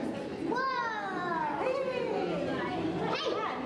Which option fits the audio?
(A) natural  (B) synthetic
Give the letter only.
A